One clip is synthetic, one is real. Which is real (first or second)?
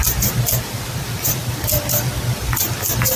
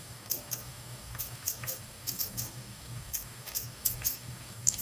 first